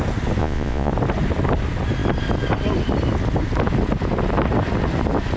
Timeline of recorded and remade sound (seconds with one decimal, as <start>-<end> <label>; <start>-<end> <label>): 0.0-0.4 recorded; 0.4-0.9 remade; 0.9-5.4 recorded